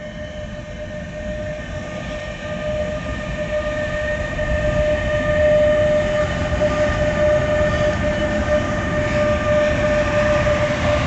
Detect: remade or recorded recorded